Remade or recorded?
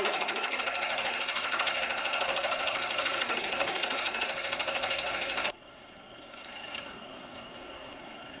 remade